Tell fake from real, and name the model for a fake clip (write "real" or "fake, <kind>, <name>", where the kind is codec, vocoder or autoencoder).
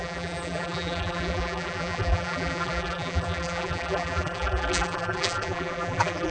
fake, vocoder, BigVGAN v2